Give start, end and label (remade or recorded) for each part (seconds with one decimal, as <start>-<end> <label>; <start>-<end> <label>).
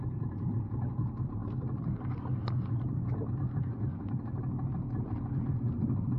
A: 0.0-6.2 recorded